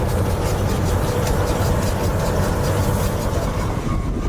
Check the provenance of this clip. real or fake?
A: real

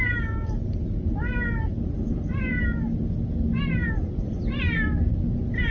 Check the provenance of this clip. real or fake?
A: real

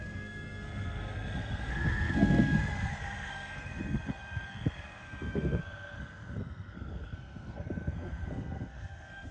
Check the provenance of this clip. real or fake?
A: fake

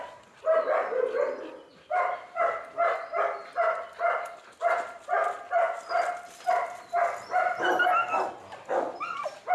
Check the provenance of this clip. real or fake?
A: real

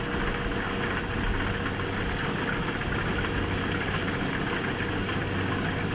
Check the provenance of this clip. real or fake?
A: real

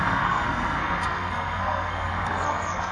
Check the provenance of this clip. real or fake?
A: fake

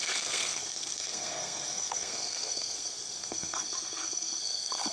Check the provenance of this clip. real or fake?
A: fake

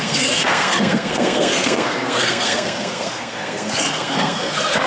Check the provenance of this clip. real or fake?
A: fake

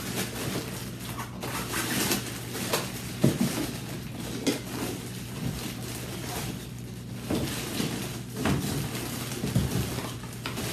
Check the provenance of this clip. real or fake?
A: real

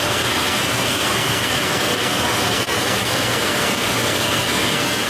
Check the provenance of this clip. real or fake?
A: fake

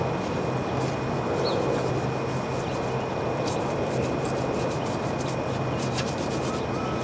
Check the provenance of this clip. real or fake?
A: real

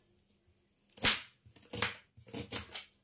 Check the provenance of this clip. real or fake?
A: real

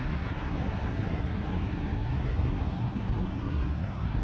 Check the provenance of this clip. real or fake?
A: fake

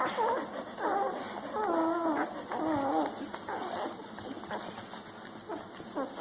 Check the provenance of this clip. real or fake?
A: real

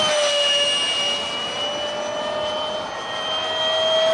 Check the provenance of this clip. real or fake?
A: real